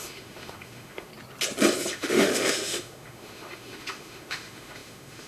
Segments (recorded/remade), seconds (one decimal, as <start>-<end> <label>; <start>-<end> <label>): 0.0-1.1 remade; 1.1-1.9 recorded; 1.9-5.3 remade